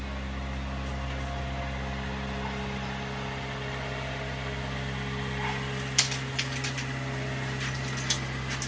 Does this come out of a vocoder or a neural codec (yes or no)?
no